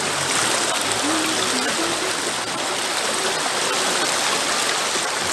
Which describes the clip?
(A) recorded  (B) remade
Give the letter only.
A